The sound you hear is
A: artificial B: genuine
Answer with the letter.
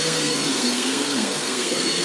A